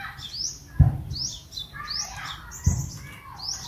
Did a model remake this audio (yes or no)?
no